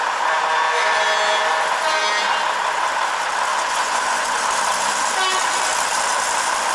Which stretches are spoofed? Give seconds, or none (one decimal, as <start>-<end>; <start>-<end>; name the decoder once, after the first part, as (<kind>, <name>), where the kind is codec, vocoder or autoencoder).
3.5-4.4 (vocoder, Vocos)